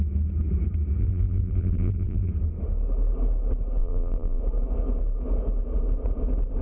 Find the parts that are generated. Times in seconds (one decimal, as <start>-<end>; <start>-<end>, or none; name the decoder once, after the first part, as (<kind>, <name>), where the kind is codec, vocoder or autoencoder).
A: 1.0-2.3 (vocoder, BigVGAN v2); 3.8-4.4

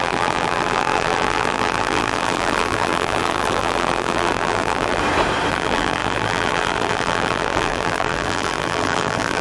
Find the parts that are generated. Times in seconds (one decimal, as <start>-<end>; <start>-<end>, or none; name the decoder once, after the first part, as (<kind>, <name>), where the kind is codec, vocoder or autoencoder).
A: 0.0-5.0 (vocoder, BigVGAN v2); 5.5-9.4